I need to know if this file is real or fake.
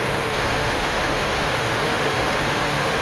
fake